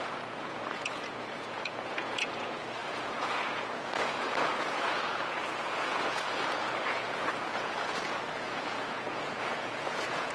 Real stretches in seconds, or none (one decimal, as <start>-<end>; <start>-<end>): none